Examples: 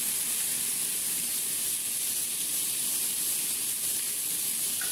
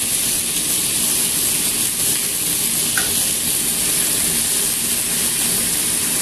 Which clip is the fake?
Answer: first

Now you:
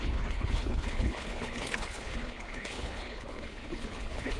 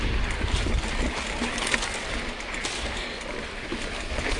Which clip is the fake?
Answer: first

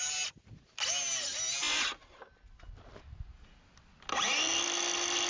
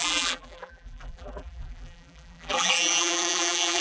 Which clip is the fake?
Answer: second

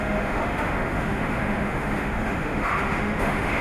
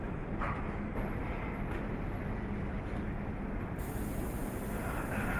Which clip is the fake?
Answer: first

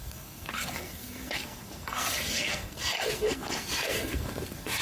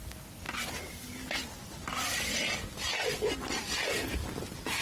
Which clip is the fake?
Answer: first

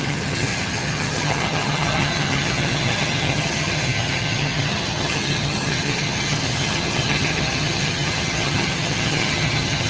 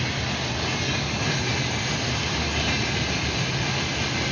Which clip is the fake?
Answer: first